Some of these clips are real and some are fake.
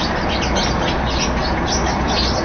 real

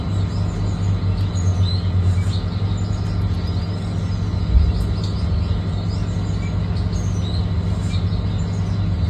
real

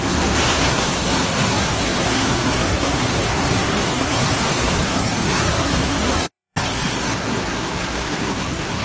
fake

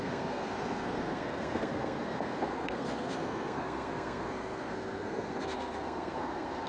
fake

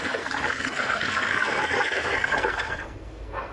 fake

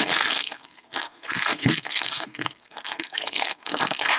fake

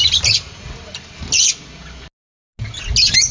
real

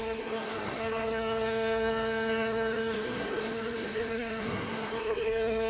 fake